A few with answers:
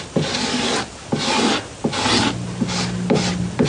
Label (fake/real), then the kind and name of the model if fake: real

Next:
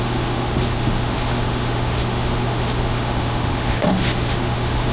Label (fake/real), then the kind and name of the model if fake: fake, autoencoder, DAC-VAE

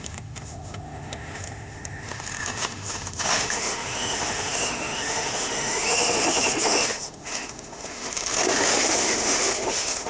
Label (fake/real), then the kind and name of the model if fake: fake, autoencoder, DAC-VAE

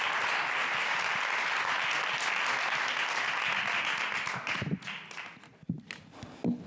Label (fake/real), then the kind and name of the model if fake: real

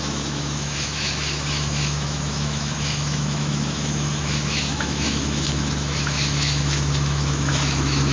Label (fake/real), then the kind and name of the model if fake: fake, autoencoder, DAC-VAE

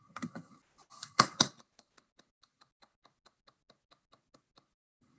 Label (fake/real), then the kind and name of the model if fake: real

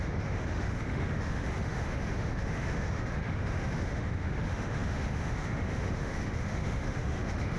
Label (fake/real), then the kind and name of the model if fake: fake, autoencoder, DAC-VAE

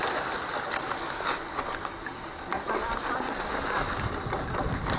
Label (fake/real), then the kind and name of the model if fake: real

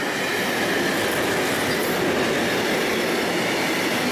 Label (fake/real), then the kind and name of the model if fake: real